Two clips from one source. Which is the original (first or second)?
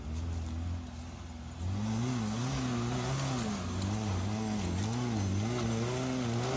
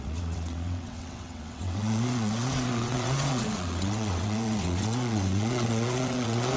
first